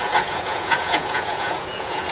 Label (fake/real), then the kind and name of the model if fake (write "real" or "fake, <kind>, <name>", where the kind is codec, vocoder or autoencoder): fake, vocoder, Vocos